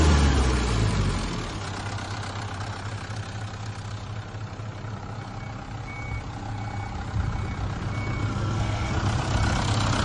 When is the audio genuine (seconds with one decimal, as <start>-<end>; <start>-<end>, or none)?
0.0-8.3; 8.9-10.0

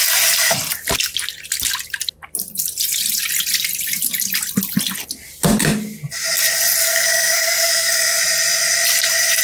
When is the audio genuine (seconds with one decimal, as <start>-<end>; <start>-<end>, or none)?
0.0-6.8; 8.2-9.4

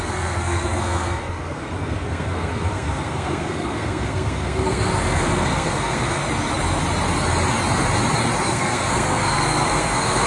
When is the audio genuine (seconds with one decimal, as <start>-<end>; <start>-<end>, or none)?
6.2-8.4

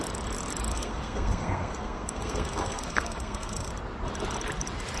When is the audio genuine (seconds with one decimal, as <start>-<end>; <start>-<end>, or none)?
0.0-0.7; 3.7-5.0